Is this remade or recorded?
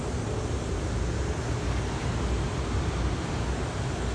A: recorded